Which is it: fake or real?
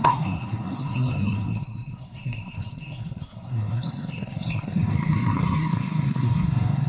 fake